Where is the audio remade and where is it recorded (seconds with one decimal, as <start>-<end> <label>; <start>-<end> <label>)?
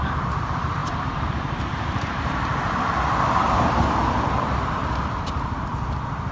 0.0-2.5 remade; 2.5-3.3 recorded; 3.3-6.3 remade